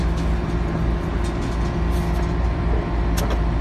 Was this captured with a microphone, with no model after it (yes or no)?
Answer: yes